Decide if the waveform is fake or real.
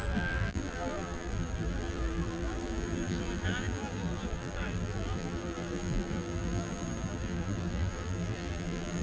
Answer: fake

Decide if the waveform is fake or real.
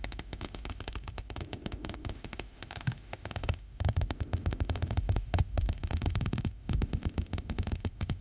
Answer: fake